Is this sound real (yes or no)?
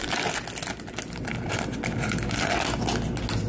yes